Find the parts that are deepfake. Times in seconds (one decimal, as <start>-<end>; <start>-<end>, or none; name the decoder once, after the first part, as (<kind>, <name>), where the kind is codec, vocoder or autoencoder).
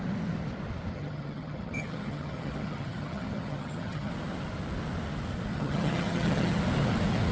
0.9-4.1 (vocoder, HiFi-GAN); 5.5-6.6